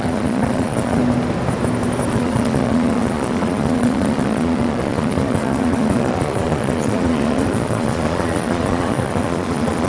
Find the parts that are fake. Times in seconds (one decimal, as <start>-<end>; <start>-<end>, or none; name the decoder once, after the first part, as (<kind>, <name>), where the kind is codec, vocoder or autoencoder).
0.0-1.0 (vocoder, Vocos); 2.1-9.9